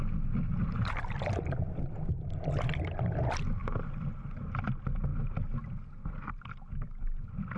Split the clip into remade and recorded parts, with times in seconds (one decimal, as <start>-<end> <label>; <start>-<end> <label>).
0.0-7.6 recorded